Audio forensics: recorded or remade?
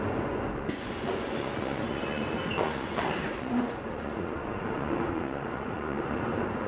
remade